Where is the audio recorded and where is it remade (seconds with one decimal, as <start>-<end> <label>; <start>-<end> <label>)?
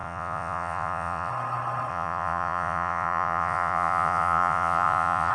0.0-1.3 remade; 1.3-1.9 recorded; 1.9-5.3 remade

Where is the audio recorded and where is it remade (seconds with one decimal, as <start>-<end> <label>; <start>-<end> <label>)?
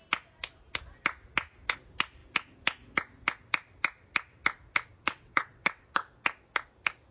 0.0-4.9 recorded; 4.9-6.1 remade; 6.1-7.1 recorded